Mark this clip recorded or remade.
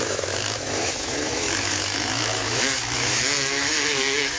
remade